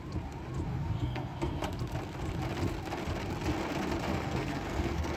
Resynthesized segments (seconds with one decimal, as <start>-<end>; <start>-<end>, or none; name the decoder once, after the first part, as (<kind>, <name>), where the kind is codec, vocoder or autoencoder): 0.7-1.7 (codec, SNAC); 4.1-5.2